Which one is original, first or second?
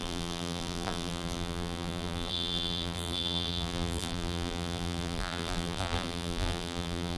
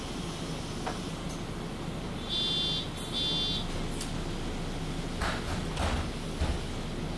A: second